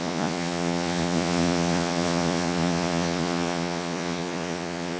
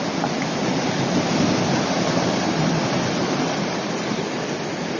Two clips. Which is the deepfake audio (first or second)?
first